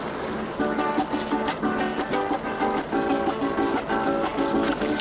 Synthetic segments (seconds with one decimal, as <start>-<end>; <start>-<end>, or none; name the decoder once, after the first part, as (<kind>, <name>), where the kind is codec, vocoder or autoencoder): none